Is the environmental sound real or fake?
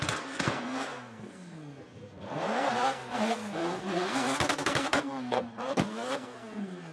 fake